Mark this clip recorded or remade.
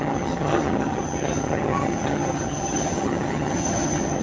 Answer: remade